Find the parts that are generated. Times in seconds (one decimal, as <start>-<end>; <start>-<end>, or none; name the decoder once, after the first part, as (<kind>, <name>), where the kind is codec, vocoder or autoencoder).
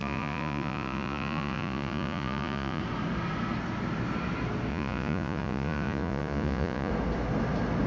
0.0-2.8 (vocoder, Vocos); 4.7-6.9